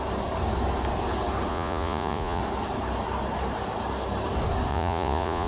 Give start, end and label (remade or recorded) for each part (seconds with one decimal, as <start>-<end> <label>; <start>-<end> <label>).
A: 0.0-1.5 recorded; 1.5-2.4 remade; 2.4-4.7 recorded; 4.7-5.5 remade